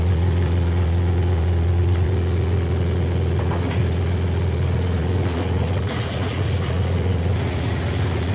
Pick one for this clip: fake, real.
fake